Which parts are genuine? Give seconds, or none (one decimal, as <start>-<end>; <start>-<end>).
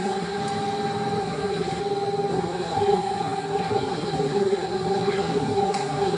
0.4-1.2; 1.8-2.3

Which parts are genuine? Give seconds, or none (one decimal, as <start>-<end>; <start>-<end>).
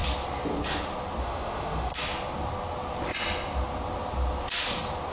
0.0-1.2; 1.9-5.1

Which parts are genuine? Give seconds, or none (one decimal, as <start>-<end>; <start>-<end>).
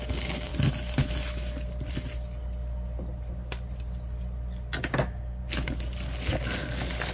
0.5-4.8; 5.4-7.1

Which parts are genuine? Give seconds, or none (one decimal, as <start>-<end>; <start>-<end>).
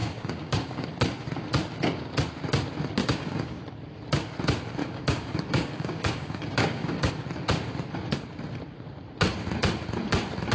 0.9-3.0; 3.6-4.8; 7.1-10.5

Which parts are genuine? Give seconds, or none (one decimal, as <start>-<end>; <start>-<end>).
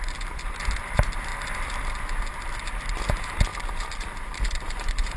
none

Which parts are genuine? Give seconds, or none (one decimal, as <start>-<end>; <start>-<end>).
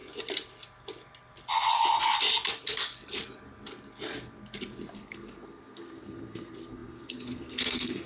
0.0-4.9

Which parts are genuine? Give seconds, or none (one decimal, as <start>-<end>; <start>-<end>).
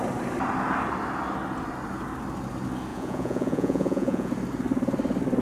0.0-2.9; 4.3-5.4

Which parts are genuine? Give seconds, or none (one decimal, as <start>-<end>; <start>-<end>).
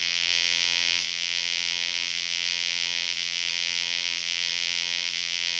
none